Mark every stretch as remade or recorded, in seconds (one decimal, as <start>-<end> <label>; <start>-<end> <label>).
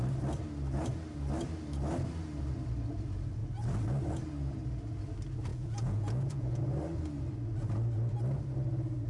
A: 0.0-5.5 recorded; 5.5-6.6 remade; 6.6-9.1 recorded